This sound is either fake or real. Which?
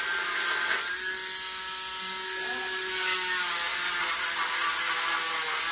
real